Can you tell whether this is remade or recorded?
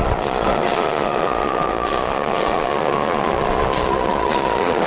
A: remade